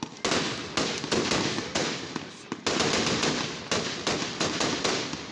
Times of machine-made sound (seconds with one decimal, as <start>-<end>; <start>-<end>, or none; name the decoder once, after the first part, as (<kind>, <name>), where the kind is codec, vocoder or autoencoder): none